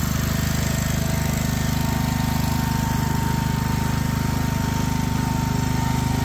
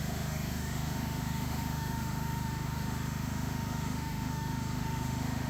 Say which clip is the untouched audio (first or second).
first